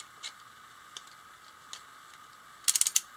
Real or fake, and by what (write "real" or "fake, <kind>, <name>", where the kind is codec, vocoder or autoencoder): real